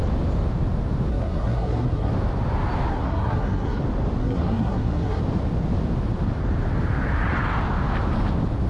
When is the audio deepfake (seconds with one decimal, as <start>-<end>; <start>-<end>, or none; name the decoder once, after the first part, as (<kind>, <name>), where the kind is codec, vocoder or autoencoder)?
1.1-2.1 (codec, SNAC); 2.9-3.8; 4.2-5.2